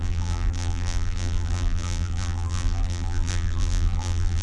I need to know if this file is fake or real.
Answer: fake